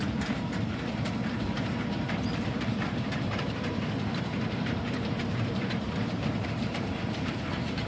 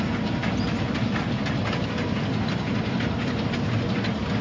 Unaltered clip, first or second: second